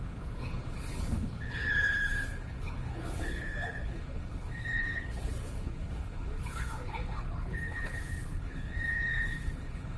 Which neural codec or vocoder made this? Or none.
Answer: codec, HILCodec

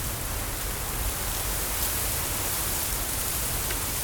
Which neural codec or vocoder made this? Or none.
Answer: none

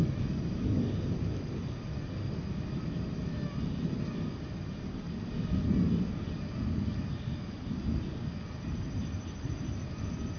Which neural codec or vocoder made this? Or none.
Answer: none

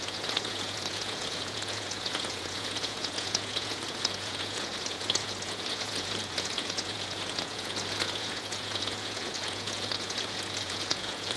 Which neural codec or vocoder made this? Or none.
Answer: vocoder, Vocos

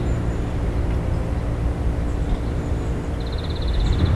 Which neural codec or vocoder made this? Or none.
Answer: none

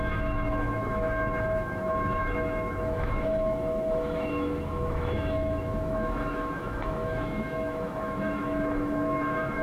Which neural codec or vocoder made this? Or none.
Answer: autoencoder, DAC-VAE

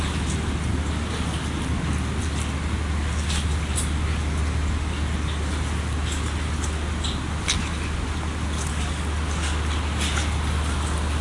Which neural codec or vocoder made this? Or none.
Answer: none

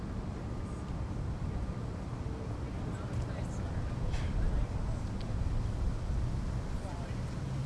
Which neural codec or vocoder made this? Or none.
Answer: none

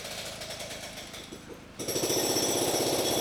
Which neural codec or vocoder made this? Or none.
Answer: none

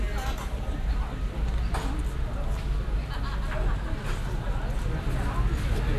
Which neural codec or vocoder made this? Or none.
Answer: none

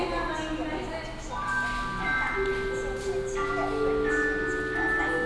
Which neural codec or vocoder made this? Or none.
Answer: none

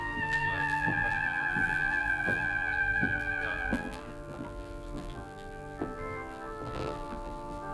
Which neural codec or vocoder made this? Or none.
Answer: vocoder, BigVGAN v2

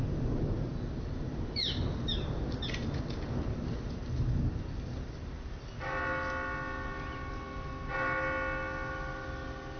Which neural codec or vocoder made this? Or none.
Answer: none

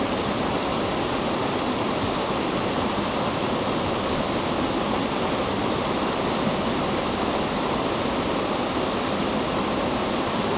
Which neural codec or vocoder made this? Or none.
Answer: none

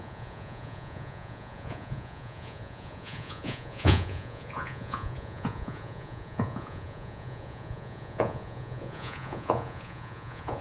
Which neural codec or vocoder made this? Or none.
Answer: vocoder, Vocos